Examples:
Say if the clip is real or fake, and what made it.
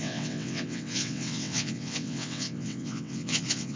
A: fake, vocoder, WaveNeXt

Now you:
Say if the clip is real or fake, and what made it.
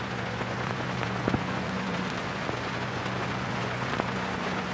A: fake, vocoder, Vocos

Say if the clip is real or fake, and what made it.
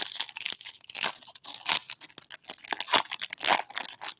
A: real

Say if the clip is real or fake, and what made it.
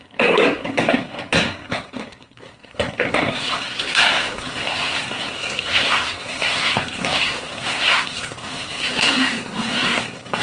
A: fake, codec, SNAC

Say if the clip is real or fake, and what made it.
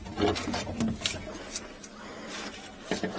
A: real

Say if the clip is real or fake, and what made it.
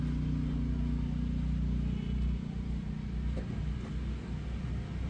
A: real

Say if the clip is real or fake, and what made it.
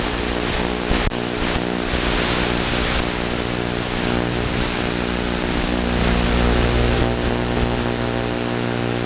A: real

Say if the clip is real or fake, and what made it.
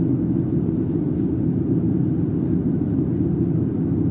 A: real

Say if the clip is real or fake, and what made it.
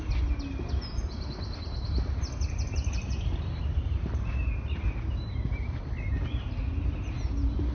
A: real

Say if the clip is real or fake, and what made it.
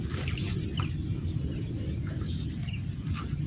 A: real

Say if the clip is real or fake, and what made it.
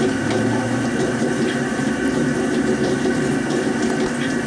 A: real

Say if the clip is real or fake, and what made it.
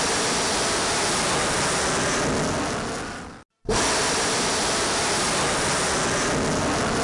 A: real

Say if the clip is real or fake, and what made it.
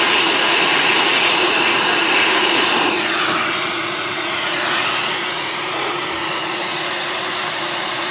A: fake, vocoder, Vocos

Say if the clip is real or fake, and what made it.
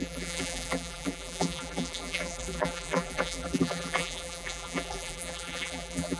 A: fake, vocoder, BigVGAN v2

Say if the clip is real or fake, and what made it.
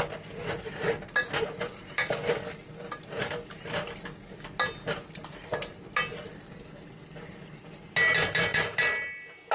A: real